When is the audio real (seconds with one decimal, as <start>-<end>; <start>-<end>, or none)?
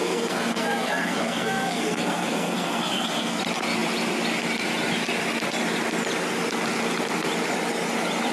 3.4-8.3